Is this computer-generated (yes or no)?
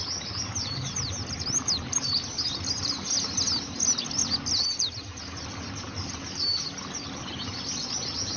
no